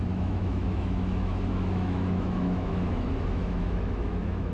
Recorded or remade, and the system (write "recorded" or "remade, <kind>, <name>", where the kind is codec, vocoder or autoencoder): remade, autoencoder, DAC-VAE